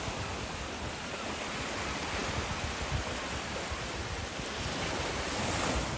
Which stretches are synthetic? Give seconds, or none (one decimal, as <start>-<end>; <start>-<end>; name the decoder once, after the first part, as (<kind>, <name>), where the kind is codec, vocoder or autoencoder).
none